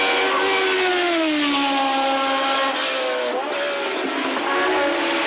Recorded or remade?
recorded